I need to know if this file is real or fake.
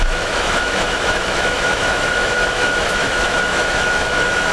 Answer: fake